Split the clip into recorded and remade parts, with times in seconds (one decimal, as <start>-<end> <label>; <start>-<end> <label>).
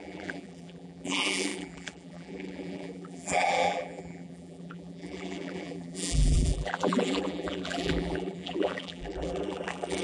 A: 0.0-10.0 remade